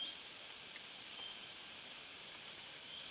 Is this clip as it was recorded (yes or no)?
yes